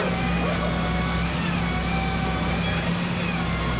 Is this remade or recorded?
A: recorded